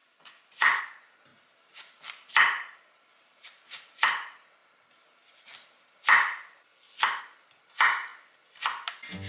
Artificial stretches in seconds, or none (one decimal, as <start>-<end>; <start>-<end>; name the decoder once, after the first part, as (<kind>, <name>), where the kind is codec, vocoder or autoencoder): 0.0-0.8 (vocoder, Vocos)